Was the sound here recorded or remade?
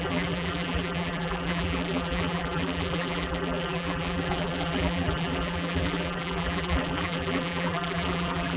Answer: remade